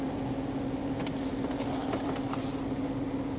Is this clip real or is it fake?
real